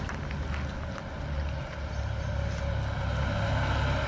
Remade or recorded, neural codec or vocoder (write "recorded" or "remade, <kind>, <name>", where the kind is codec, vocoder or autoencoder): recorded